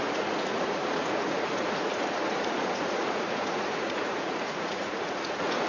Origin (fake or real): fake